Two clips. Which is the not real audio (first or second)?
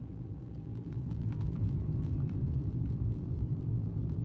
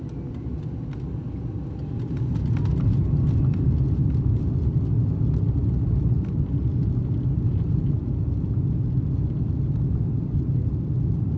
first